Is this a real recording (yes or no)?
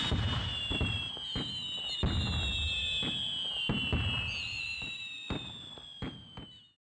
no